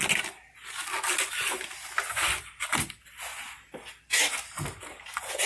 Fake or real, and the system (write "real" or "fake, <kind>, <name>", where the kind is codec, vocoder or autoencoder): real